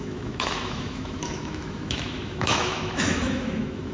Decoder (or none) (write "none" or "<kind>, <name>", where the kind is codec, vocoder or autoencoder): autoencoder, DAC-VAE